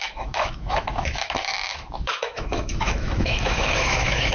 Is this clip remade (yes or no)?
yes